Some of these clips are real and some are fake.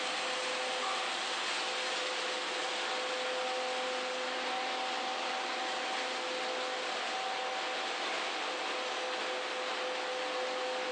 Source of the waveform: real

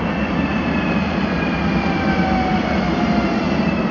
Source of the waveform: real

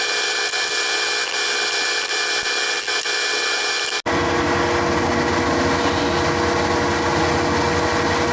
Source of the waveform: real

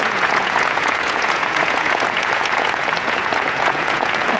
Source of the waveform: fake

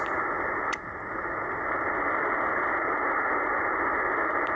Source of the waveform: real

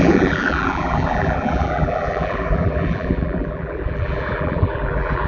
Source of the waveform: fake